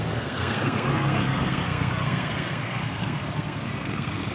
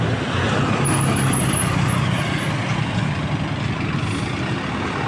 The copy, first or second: first